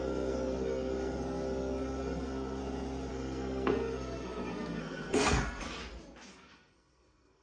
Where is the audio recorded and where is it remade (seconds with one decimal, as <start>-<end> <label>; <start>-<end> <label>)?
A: 0.0-2.6 remade; 2.6-3.1 recorded; 3.1-5.6 remade; 5.6-6.3 recorded; 6.3-7.4 remade